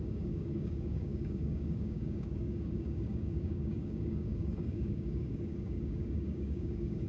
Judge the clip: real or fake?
fake